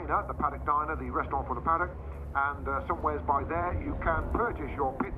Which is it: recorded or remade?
remade